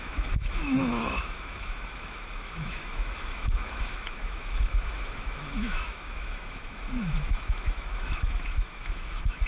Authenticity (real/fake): fake